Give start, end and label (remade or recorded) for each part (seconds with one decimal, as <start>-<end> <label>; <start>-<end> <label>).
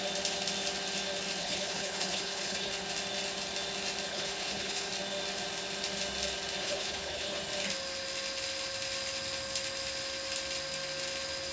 0.0-1.4 recorded; 1.4-2.7 remade; 2.7-4.1 recorded; 4.1-4.9 remade; 4.9-6.6 recorded; 6.6-7.4 remade; 7.4-11.5 recorded